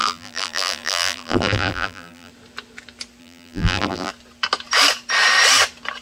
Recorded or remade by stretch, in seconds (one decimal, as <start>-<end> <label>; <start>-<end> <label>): 0.0-2.3 remade; 2.3-3.2 recorded; 3.2-4.1 remade; 4.1-6.0 recorded